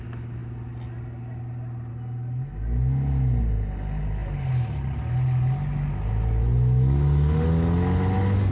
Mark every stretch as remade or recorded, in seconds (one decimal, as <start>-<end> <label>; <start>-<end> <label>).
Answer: 0.0-8.5 recorded